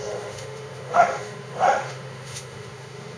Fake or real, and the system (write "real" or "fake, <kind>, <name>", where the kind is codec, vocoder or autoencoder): fake, autoencoder, DAC-VAE